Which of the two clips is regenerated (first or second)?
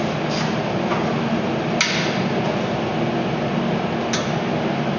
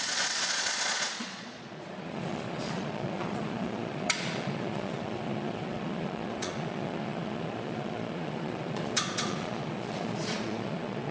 second